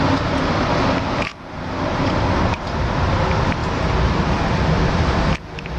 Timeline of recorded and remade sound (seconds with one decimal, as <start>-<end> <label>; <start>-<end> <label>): 0.0-5.8 recorded

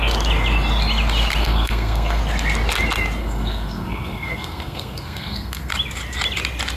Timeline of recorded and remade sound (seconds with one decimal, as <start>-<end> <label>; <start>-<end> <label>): 0.0-1.4 recorded; 1.4-2.2 remade; 2.2-3.2 recorded; 3.2-5.7 remade; 5.7-6.8 recorded

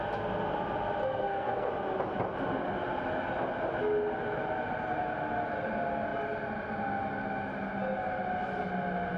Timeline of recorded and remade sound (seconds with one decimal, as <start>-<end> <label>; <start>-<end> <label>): 0.0-1.0 recorded; 1.0-1.7 remade; 1.7-9.2 recorded